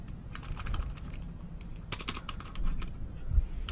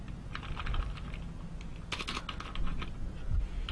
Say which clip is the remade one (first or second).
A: first